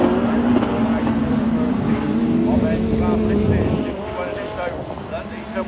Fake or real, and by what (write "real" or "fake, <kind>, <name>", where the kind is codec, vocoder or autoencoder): real